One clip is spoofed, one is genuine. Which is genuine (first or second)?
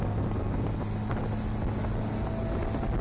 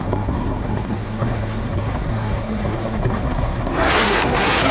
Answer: first